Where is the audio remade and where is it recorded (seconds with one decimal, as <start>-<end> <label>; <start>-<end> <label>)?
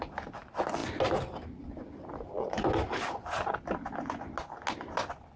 0.0-5.4 recorded